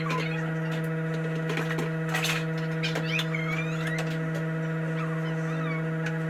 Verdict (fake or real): real